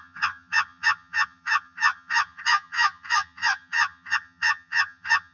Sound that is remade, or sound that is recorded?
remade